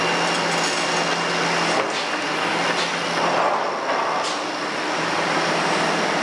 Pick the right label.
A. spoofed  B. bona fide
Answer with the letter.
B